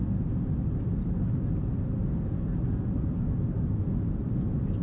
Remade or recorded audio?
recorded